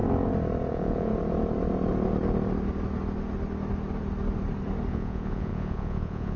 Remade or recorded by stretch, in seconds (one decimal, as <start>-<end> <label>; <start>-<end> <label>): 0.0-0.7 recorded; 0.7-1.1 remade; 1.1-4.9 recorded; 4.9-6.4 remade